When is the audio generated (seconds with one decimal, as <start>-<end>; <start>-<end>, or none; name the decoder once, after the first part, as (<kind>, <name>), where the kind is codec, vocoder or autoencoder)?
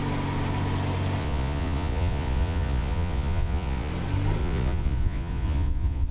1.2-3.9 (vocoder, Vocos); 4.4-6.1